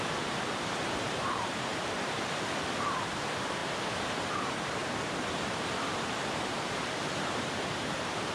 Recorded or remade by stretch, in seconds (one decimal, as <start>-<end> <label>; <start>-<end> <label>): 0.0-1.7 remade; 1.7-2.9 recorded; 2.9-3.6 remade; 3.6-4.3 recorded; 4.3-4.8 remade; 4.8-7.0 recorded; 7.0-8.3 remade